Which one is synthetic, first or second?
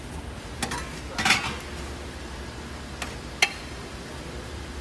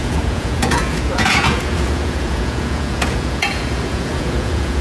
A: second